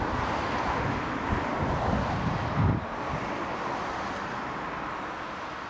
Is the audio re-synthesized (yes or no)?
no